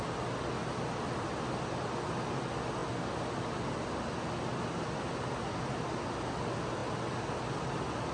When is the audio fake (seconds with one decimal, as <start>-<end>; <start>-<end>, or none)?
none